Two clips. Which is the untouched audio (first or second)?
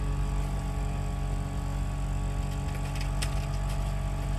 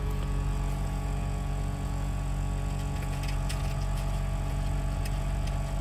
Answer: first